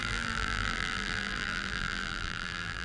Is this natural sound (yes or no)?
no